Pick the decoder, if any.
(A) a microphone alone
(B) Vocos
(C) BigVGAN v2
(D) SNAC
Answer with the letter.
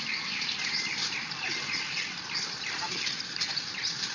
C